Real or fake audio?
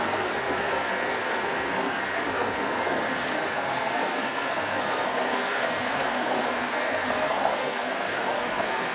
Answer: fake